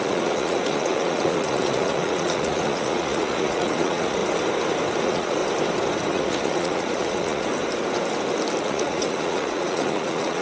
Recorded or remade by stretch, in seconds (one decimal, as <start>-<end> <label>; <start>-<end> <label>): 0.0-4.2 remade; 4.2-5.0 recorded; 5.0-5.4 remade; 5.4-6.1 recorded; 6.1-7.5 remade; 7.5-8.6 recorded; 8.6-10.4 remade